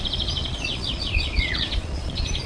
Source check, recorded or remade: remade